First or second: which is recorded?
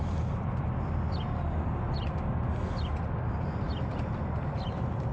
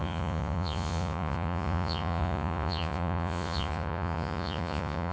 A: first